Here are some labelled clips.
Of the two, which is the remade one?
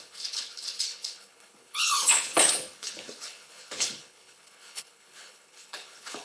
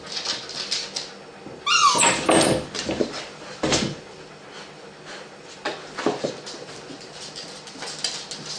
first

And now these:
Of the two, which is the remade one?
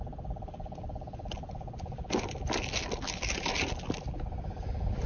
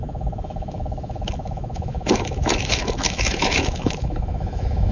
second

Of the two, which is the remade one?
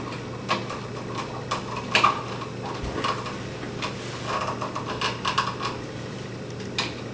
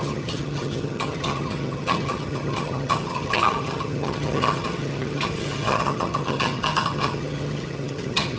second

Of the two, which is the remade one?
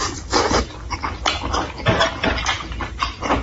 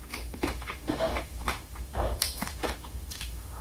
second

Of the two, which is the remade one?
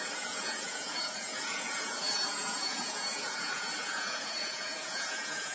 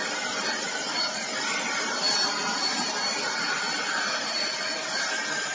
first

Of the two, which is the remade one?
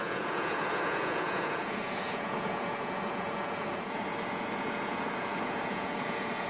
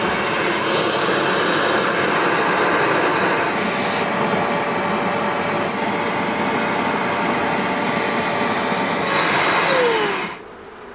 first